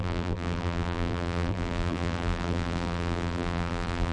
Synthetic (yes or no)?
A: yes